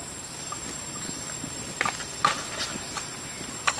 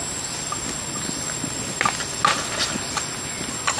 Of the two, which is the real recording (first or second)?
second